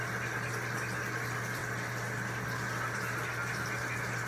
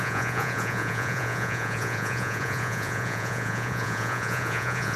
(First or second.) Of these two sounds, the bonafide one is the first